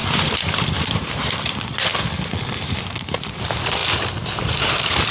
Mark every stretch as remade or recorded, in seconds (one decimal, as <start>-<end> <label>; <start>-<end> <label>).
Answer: 0.0-3.8 remade; 3.8-4.4 recorded; 4.4-5.1 remade